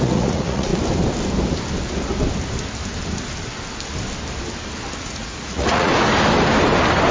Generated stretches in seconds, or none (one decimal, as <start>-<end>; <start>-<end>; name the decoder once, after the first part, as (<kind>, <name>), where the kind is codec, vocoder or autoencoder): 0.0-0.7 (vocoder, Vocos); 5.0-5.9